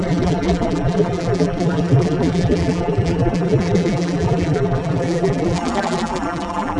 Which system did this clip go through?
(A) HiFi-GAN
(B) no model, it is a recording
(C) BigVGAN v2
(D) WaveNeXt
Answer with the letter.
C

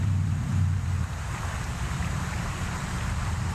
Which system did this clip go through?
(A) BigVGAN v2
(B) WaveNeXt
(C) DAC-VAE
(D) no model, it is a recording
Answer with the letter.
A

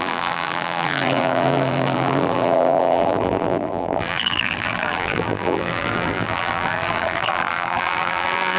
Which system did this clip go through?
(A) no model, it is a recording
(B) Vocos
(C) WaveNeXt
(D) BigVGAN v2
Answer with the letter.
D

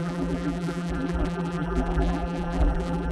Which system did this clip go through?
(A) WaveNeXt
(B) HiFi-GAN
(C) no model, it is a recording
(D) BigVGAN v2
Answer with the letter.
D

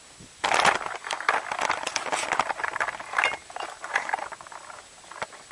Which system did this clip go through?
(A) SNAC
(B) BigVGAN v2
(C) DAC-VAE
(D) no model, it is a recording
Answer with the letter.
D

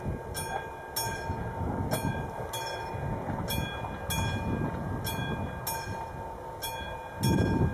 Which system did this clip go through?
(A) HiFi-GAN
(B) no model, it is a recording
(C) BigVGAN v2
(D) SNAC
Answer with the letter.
B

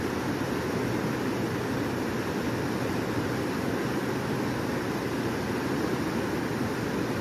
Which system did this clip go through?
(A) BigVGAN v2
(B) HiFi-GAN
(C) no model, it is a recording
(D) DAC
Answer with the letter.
C